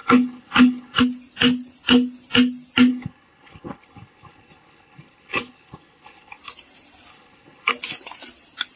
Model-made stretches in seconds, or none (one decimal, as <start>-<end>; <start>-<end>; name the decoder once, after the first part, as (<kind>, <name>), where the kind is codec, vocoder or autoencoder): 0.0-1.0 (codec, HILCodec); 2.9-6.4; 7.1-7.7